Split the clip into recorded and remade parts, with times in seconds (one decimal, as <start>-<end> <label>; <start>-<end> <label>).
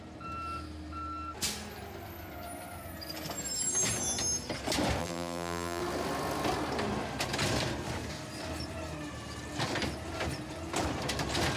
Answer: 0.0-5.0 recorded; 5.0-5.8 remade; 5.8-11.6 recorded